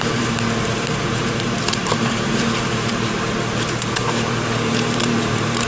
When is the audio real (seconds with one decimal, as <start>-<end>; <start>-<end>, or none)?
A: none